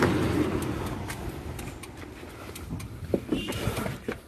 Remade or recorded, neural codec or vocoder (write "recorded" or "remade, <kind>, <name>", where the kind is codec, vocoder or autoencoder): recorded